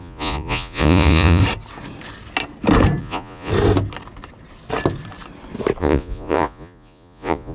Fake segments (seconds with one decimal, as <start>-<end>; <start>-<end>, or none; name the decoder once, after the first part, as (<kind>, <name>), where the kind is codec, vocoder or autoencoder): 0.0-1.4 (vocoder, Vocos); 3.0-3.5; 5.8-7.5

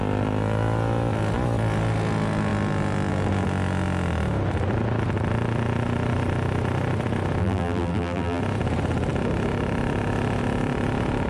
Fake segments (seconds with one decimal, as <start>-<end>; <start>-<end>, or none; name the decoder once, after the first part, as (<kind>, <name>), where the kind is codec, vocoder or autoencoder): 7.4-8.4 (vocoder, BigVGAN v2)

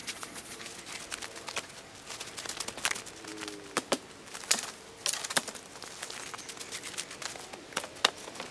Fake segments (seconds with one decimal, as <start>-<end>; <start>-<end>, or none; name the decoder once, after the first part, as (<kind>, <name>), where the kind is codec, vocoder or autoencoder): 0.0-0.6 (vocoder, Vocos)